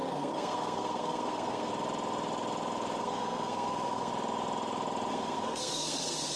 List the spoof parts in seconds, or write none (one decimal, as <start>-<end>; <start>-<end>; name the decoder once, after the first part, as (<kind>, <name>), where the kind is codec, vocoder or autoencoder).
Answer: 0.0-1.7 (codec, SNAC); 3.0-4.1; 5.1-6.4